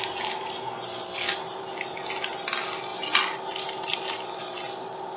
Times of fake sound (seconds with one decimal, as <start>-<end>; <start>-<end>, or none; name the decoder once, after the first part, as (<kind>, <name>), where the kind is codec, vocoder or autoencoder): none